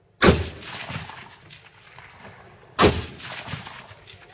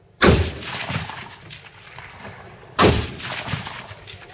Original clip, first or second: first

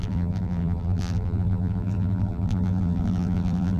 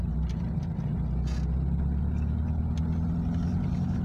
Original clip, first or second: second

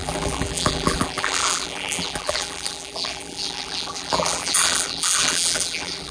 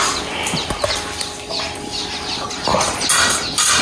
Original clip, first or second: second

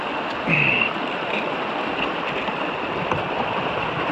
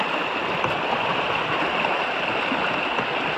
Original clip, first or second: second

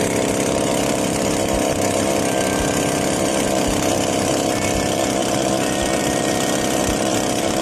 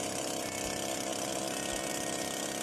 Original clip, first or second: second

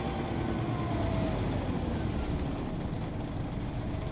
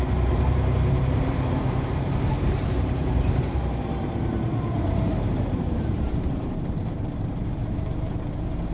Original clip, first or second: first